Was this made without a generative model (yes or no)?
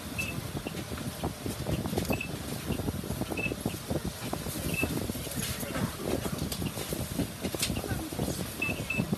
yes